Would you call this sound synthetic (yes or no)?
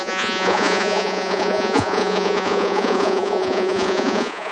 yes